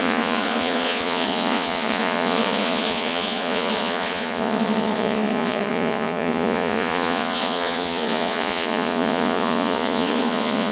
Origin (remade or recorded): remade